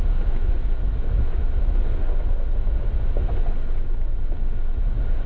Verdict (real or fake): real